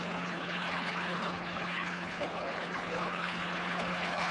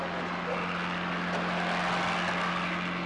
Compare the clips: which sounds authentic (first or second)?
second